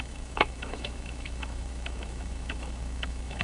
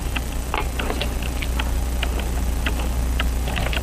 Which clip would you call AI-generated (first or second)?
first